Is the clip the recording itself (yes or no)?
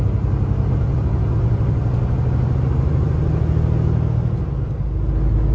yes